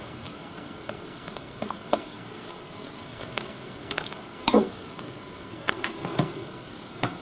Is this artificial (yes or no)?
yes